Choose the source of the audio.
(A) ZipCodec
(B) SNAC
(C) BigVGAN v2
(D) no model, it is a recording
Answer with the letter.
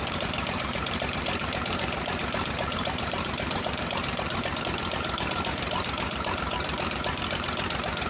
C